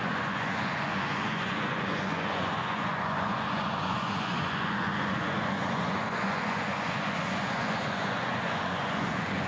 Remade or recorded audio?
remade